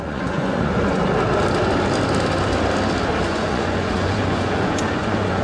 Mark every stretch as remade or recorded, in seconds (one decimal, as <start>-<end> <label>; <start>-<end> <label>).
0.0-1.0 remade; 1.0-3.3 recorded; 3.3-5.4 remade